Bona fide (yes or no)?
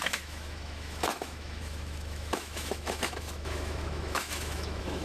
no